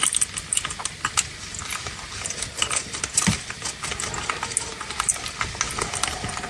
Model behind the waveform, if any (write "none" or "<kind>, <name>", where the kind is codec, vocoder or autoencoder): none